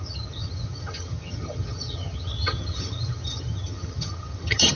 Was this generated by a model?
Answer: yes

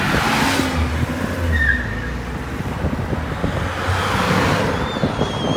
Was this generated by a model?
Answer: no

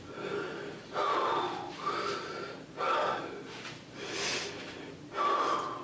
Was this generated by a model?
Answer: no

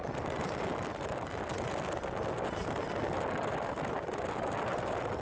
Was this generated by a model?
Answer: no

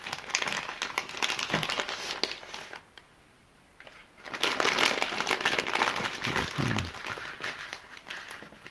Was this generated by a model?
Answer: no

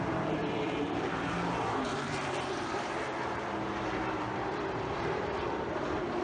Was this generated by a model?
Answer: yes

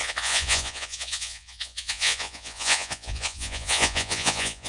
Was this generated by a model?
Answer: yes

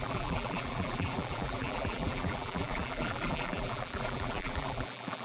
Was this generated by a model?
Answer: yes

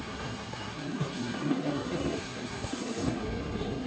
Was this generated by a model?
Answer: yes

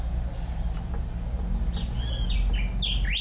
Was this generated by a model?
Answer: no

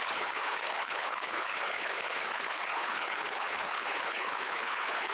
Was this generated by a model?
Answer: yes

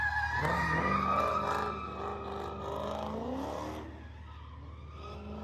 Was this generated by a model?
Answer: no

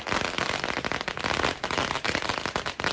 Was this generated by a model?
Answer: no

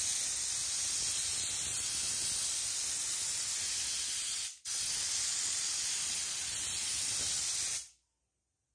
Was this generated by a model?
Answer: no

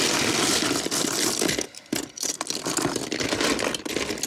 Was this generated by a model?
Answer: no